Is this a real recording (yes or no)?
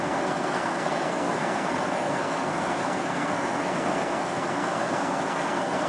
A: no